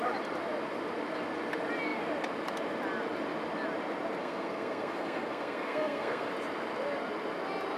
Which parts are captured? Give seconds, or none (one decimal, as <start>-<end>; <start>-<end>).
0.0-4.2; 6.3-7.8